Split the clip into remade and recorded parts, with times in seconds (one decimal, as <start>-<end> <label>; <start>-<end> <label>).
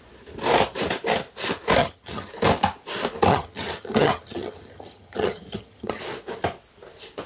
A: 0.0-1.8 recorded; 1.8-2.3 remade; 2.3-3.3 recorded; 3.3-6.0 remade; 6.0-7.3 recorded